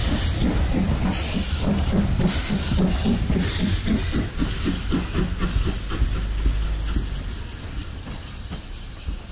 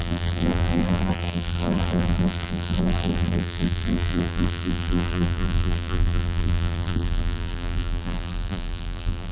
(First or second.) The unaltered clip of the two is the first